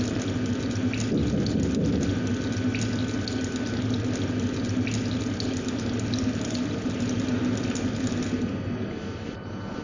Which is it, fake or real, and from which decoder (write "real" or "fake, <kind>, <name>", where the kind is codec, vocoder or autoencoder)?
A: real